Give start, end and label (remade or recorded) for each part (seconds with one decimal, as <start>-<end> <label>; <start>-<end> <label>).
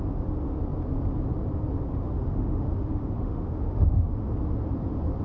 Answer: 0.0-1.9 recorded; 1.9-4.2 remade; 4.2-5.2 recorded